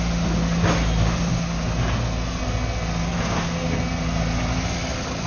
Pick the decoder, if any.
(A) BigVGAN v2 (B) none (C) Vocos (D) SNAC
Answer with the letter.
B